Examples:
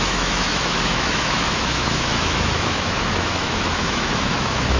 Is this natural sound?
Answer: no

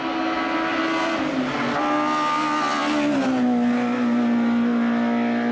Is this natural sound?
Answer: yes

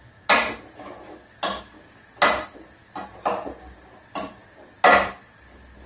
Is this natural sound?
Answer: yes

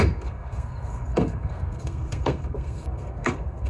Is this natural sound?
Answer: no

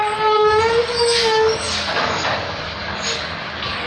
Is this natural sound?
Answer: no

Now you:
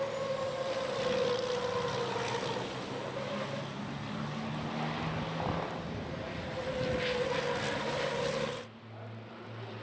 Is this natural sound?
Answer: yes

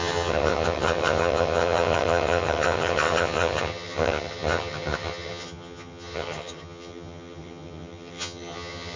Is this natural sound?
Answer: no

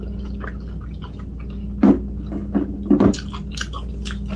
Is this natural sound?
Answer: yes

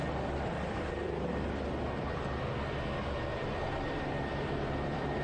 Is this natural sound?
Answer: no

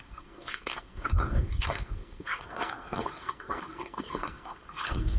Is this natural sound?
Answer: no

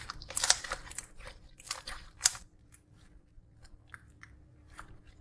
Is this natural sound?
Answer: no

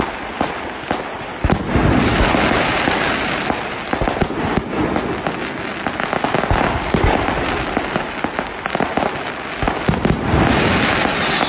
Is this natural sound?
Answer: yes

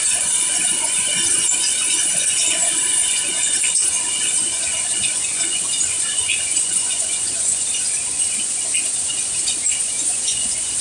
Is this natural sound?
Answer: no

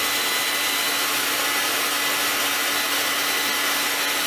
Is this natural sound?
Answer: yes